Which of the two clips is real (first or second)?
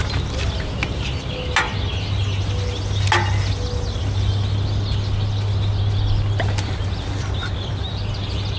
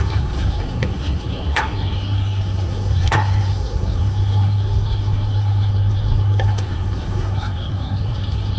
first